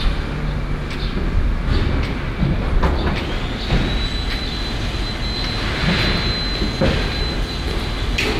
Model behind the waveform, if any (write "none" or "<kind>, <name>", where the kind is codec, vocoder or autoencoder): none